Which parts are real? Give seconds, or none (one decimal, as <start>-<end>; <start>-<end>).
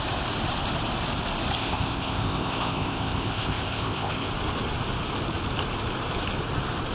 0.0-1.6; 4.3-6.9